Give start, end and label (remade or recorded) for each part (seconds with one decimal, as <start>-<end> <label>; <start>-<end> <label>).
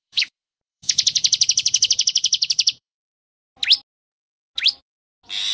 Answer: 0.0-3.3 remade; 3.3-5.5 recorded